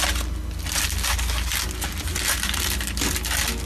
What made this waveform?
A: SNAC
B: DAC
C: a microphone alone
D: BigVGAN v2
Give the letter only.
C